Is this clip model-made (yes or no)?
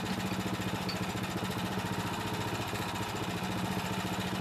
no